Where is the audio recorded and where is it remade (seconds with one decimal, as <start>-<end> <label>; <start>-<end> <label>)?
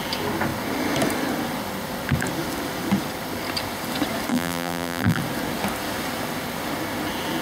0.0-4.3 recorded; 4.3-5.2 remade; 5.2-7.4 recorded